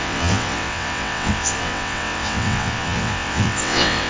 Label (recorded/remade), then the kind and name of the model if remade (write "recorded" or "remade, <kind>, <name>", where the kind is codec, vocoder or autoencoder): remade, vocoder, WaveNeXt